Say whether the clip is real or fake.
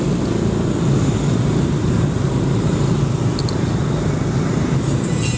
real